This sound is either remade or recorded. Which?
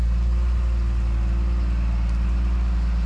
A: recorded